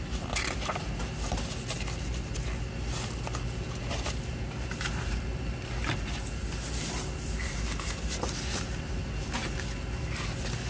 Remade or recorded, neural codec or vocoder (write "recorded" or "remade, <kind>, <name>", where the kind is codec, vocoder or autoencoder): recorded